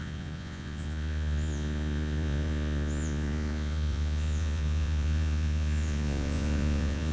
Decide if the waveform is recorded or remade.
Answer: remade